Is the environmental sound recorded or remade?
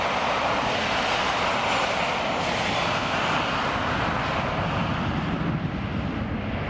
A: recorded